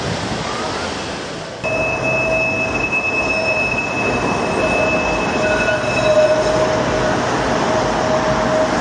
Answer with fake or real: real